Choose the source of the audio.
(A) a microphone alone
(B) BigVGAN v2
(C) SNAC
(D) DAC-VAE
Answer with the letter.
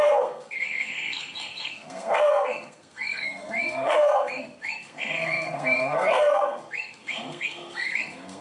C